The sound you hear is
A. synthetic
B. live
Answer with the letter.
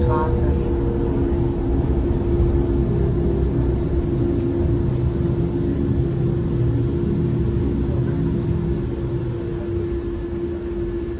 B